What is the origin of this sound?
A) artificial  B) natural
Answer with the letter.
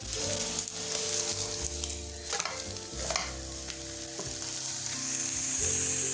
B